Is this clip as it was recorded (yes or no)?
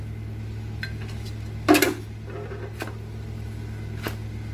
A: yes